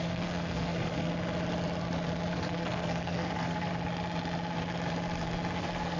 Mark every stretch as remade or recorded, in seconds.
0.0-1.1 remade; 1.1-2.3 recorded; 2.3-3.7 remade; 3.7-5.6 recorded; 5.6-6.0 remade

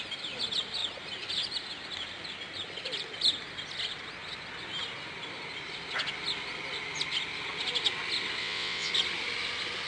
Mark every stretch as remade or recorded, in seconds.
0.0-8.4 recorded; 8.4-8.9 remade; 8.9-9.9 recorded

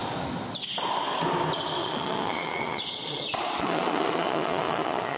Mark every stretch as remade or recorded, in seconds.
0.0-1.8 recorded; 1.8-5.2 remade

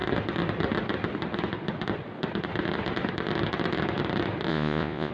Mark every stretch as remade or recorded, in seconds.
0.0-4.5 recorded; 4.5-5.1 remade

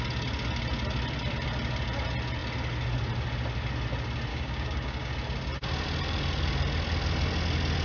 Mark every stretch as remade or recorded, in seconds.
0.0-4.3 recorded; 4.3-5.1 remade; 5.1-7.8 recorded